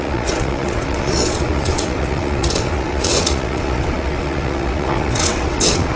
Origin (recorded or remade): remade